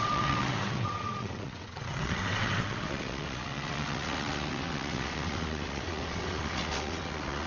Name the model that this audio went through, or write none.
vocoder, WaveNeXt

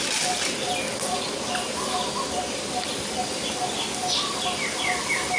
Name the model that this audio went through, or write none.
none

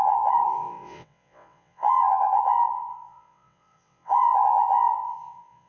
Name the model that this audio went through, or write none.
vocoder, WaveNeXt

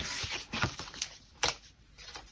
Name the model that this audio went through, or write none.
none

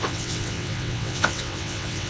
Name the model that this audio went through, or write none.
vocoder, WaveNeXt